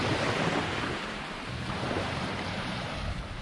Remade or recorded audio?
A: remade